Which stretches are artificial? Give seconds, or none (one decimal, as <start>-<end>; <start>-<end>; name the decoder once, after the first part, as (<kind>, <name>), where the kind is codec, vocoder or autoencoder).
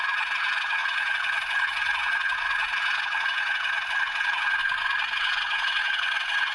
0.0-4.6 (vocoder, WaveNeXt); 5.2-6.5